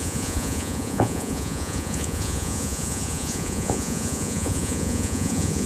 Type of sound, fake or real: fake